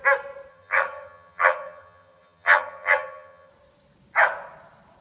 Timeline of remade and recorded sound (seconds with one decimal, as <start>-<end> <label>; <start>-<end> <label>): 0.0-0.5 recorded; 0.5-3.5 remade; 3.5-5.0 recorded